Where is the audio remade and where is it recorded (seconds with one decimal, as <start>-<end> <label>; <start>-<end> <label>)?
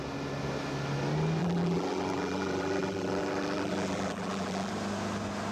0.0-1.4 recorded; 1.4-4.7 remade; 4.7-5.5 recorded